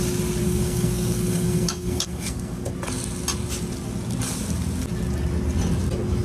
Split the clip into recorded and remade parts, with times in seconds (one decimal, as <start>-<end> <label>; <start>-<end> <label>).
0.0-0.4 recorded; 0.4-2.7 remade; 2.7-6.2 recorded